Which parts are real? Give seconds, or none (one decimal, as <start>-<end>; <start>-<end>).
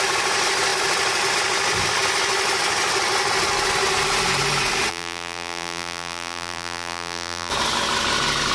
0.0-4.9; 7.5-8.5